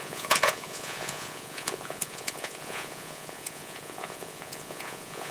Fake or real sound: fake